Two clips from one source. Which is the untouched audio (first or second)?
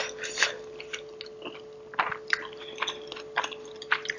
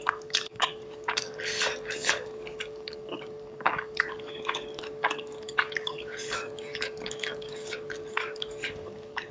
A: first